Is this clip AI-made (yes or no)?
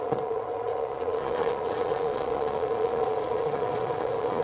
yes